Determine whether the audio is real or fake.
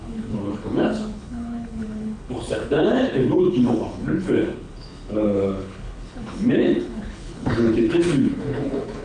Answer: fake